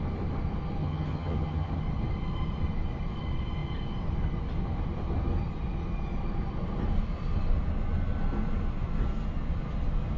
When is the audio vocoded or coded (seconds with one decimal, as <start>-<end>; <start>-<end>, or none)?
0.8-1.7